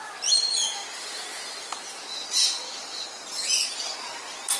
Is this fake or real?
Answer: real